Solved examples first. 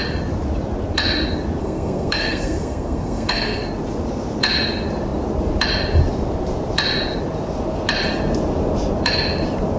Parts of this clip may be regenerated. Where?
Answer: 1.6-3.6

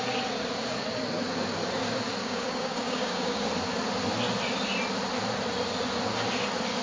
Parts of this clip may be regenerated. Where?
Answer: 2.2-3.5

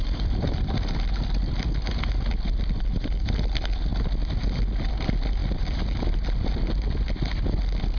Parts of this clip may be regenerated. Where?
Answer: none

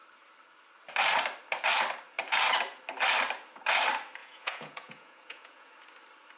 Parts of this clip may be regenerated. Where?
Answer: 4.2-5.7

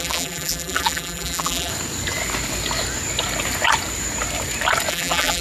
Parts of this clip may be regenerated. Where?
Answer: 0.0-1.7; 4.9-5.4

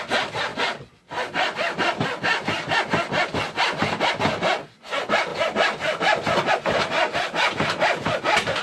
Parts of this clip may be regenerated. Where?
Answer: none

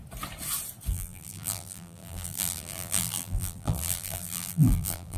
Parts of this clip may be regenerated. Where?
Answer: 0.9-5.2